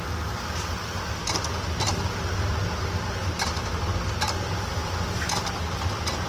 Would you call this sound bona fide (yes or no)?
yes